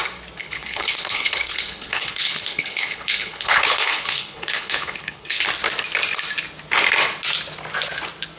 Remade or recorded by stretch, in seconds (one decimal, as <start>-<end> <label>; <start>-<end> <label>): 0.0-0.4 recorded; 0.4-5.4 remade; 5.4-8.4 recorded